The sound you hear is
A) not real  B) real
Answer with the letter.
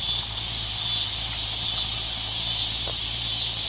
B